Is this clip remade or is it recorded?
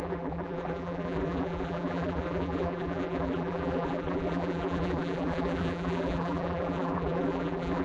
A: remade